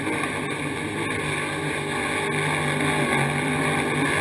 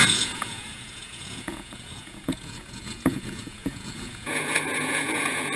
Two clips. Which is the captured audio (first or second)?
first